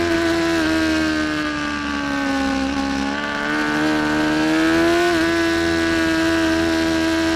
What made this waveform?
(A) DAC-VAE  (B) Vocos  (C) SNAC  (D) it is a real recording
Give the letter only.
D